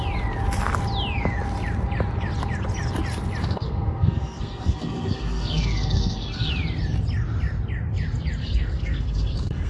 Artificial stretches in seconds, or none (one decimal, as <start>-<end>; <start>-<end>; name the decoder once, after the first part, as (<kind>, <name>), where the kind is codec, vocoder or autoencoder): 3.4-6.5 (codec, SNAC); 8.4-9.7